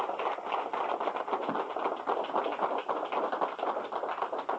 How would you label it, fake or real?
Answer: real